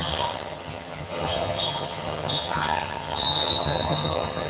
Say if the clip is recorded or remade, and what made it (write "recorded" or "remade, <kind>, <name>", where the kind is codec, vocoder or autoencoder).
remade, vocoder, HiFi-GAN